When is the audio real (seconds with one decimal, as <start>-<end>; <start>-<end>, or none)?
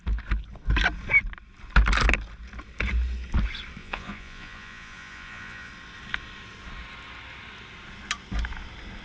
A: 0.0-3.8; 5.7-9.0